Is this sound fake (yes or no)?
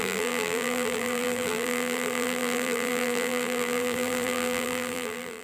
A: yes